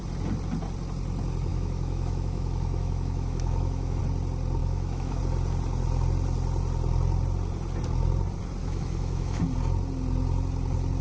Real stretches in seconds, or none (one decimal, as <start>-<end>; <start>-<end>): 0.0-1.5; 4.0-4.6; 5.2-8.6; 9.4-11.0